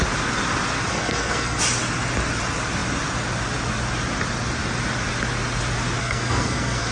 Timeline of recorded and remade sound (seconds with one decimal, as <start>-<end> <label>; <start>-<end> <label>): 0.0-0.9 recorded; 0.9-1.6 remade; 1.6-6.0 recorded; 6.0-6.9 remade